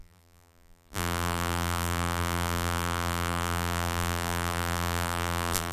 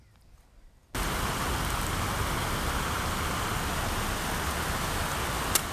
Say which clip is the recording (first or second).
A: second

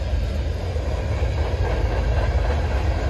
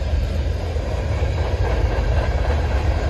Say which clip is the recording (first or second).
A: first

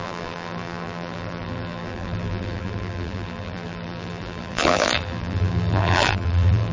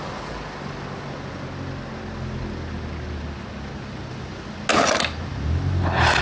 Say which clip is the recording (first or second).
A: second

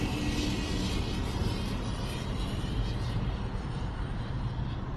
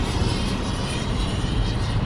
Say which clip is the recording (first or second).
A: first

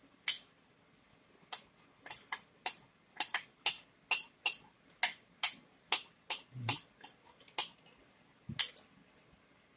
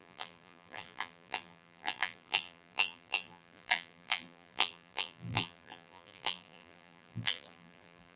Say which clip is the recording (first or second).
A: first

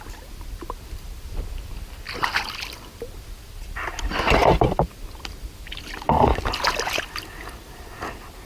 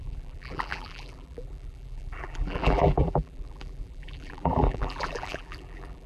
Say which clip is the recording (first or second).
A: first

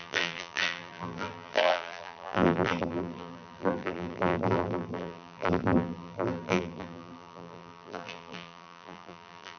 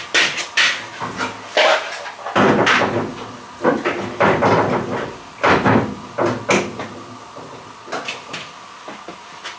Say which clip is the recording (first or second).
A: second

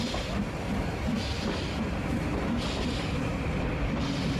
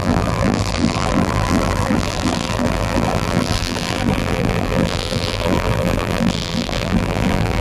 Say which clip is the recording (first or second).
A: first